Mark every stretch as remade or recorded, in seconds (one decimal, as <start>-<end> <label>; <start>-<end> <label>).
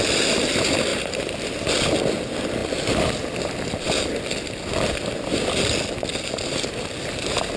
0.0-0.9 recorded; 0.9-1.4 remade; 1.4-7.6 recorded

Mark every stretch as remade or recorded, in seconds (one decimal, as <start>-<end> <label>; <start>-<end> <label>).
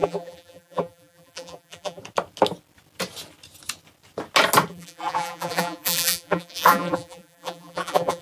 0.0-2.0 remade; 2.0-4.7 recorded; 4.7-8.2 remade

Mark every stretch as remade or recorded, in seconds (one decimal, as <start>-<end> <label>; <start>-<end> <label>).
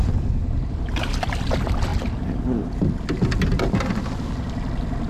0.0-5.1 recorded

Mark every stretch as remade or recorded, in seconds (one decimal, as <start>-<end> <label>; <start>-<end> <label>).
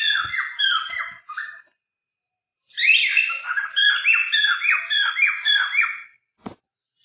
0.0-4.2 remade; 4.2-5.1 recorded; 5.1-7.0 remade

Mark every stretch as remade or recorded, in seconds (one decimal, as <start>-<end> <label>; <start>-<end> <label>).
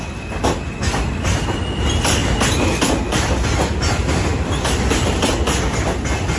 0.0-4.3 recorded; 4.3-5.2 remade; 5.2-6.4 recorded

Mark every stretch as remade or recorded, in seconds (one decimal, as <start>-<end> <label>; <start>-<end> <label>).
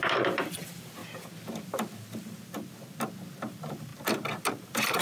0.0-1.0 remade; 1.0-3.4 recorded; 3.4-3.9 remade; 3.9-4.5 recorded; 4.5-5.0 remade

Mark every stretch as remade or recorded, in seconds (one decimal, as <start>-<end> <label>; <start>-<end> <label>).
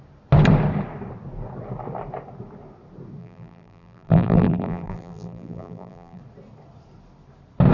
0.0-3.2 recorded; 3.2-6.2 remade; 6.2-7.7 recorded